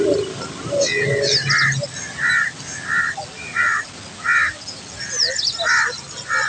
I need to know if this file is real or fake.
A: real